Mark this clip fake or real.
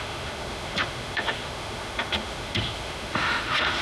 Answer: fake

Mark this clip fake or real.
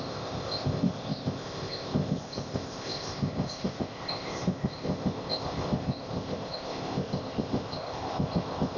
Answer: fake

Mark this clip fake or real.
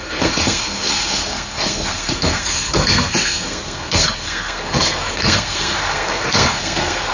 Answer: fake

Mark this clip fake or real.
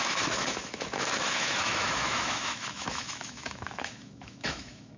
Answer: fake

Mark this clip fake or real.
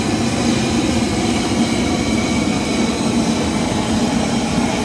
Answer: real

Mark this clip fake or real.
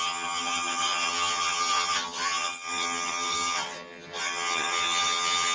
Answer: fake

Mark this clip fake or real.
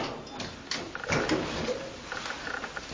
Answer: real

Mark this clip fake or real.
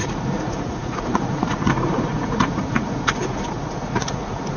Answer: fake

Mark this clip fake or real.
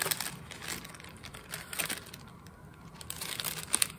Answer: real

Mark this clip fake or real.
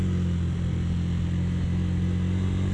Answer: real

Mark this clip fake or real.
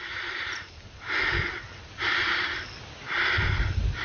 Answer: real